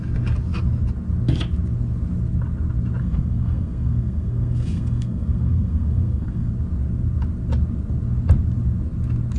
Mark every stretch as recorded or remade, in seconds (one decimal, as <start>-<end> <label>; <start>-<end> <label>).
0.0-3.0 recorded; 3.0-6.5 remade; 6.5-9.4 recorded